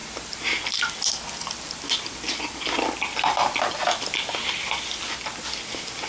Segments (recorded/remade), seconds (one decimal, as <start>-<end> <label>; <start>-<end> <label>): 0.0-6.1 recorded